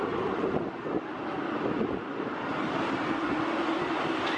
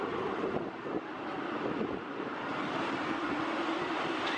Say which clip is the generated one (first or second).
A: second